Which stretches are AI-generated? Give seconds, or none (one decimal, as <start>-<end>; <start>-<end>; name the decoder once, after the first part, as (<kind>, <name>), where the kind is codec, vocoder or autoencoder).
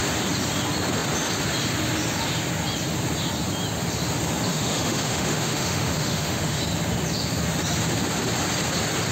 4.5-6.6 (autoencoder, DAC-VAE)